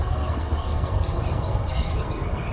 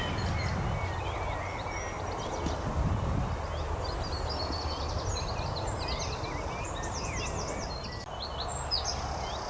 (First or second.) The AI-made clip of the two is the first